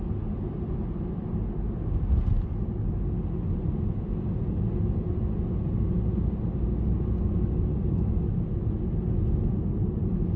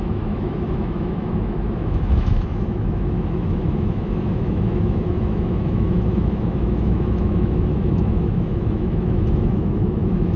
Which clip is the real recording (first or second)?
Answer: first